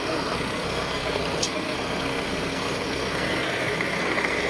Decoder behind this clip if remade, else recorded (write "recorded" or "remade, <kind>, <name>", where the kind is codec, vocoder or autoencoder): remade, codec, SNAC